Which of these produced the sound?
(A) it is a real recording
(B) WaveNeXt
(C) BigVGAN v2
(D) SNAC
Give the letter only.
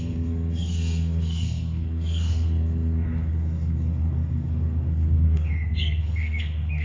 D